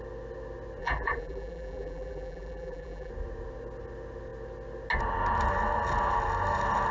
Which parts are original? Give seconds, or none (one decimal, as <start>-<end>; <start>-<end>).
0.0-0.8; 3.1-6.9